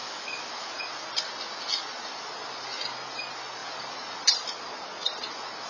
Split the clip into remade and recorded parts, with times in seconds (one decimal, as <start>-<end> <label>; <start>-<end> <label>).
0.0-0.7 remade; 0.7-5.7 recorded